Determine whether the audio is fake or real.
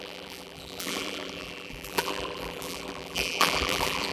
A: fake